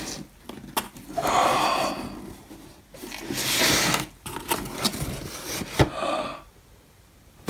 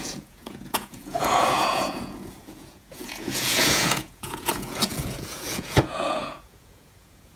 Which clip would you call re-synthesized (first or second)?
second